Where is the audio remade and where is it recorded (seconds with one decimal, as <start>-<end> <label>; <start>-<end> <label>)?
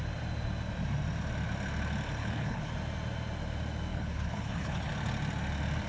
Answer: 0.0-2.2 recorded; 2.2-2.7 remade; 2.7-3.9 recorded; 3.9-4.9 remade; 4.9-5.9 recorded